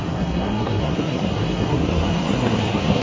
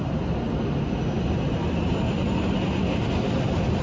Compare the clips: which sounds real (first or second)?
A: second